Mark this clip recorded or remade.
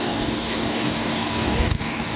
remade